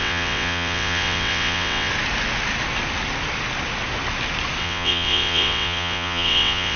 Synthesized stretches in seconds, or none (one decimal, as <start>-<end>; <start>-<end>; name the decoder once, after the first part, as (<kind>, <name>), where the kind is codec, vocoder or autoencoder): 0.0-1.9 (vocoder, WaveNeXt); 4.6-6.8